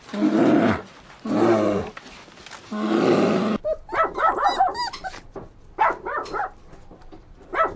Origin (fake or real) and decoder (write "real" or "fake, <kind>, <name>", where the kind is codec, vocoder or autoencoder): real